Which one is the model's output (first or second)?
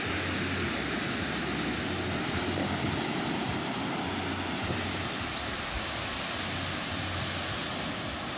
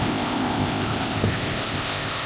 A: second